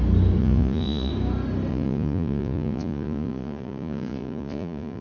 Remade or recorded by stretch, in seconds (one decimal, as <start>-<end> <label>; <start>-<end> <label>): 0.0-0.4 recorded; 0.4-1.1 remade; 1.1-1.7 recorded; 1.7-5.0 remade